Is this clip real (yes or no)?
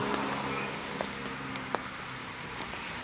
yes